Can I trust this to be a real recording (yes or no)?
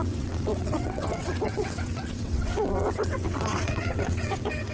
no